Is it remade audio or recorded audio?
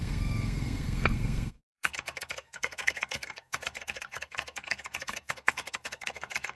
remade